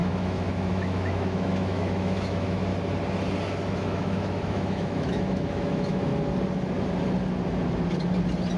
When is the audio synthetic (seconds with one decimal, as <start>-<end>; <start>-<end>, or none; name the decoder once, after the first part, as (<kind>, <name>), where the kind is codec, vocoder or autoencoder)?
0.0-2.7 (autoencoder, DAC-VAE); 3.7-6.1